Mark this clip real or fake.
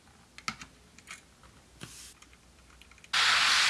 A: real